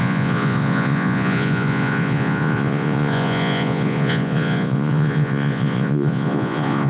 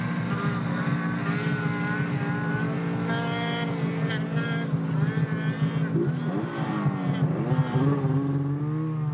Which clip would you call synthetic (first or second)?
first